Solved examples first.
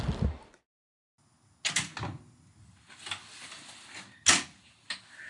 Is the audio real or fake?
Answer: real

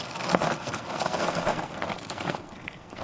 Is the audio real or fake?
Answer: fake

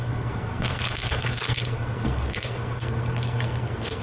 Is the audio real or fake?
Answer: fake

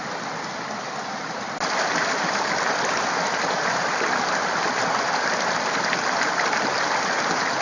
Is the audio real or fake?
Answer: real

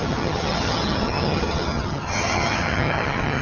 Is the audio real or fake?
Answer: fake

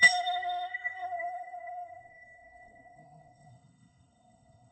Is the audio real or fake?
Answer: fake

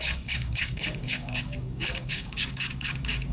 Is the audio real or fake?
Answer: fake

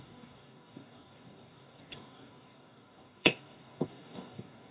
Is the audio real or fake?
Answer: fake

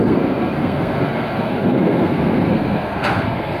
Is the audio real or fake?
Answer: fake